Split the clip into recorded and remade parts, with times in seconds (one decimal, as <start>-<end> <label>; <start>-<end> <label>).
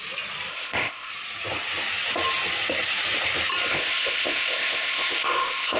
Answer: 0.0-0.5 recorded; 0.5-1.1 remade; 1.1-3.7 recorded; 3.7-5.8 remade